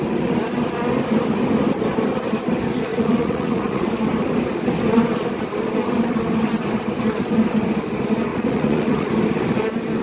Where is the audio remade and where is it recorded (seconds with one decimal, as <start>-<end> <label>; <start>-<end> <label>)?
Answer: 0.0-2.9 recorded; 2.9-3.9 remade; 3.9-8.3 recorded; 8.3-9.1 remade; 9.1-10.0 recorded